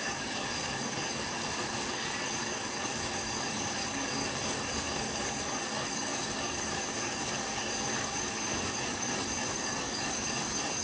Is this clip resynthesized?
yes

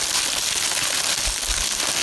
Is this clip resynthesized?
no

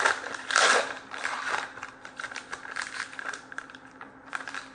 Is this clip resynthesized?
yes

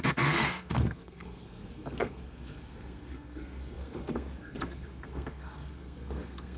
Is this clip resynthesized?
yes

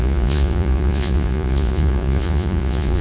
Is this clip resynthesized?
yes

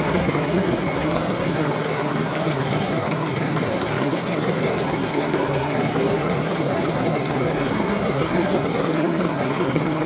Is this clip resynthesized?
yes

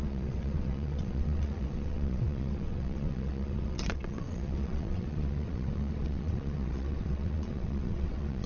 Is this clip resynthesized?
yes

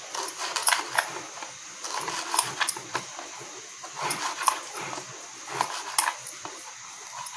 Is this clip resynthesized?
no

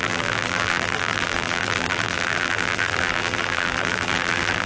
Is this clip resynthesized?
yes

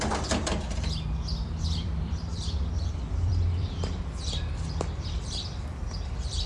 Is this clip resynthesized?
yes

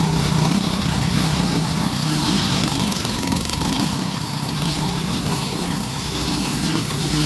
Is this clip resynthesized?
yes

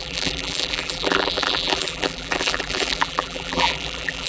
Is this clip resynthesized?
yes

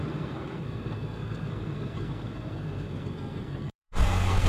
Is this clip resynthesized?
yes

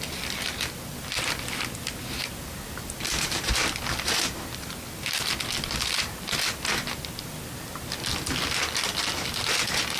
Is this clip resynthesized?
no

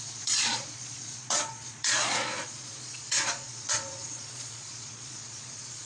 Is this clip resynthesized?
yes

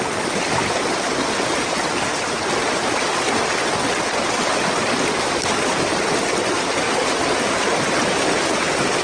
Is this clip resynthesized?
no